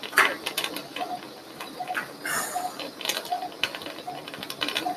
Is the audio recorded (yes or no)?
no